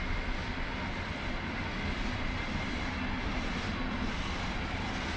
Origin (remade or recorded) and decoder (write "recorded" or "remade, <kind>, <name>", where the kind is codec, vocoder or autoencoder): recorded